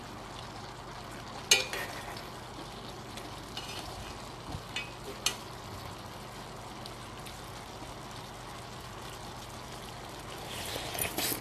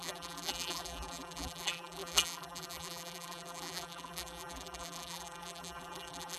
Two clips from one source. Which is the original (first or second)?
first